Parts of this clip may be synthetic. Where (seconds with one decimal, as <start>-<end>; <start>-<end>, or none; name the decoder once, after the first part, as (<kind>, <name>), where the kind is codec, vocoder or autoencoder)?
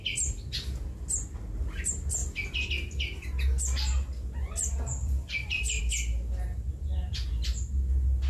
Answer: 2.2-2.7 (vocoder, BigVGAN v2); 5.0-5.8